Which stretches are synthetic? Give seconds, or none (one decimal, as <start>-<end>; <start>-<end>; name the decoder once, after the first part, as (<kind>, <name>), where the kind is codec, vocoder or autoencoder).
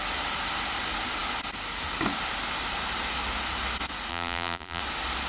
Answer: 4.1-4.8 (vocoder, BigVGAN v2)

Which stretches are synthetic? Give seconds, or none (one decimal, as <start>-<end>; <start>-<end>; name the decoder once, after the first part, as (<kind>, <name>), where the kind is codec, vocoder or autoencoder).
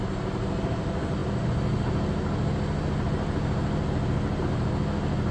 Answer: none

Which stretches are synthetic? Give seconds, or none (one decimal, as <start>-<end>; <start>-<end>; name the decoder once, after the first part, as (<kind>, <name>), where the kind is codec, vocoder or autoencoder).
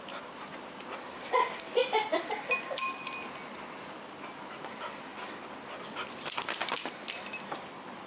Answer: 0.0-2.1 (vocoder, BigVGAN v2); 4.5-5.1; 6.1-8.1